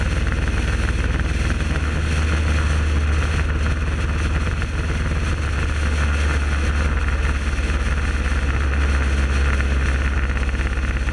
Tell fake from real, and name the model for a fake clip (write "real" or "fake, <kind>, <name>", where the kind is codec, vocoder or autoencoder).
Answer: real